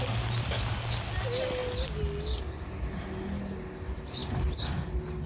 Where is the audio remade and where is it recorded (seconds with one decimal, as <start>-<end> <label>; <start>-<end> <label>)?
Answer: 0.0-5.3 recorded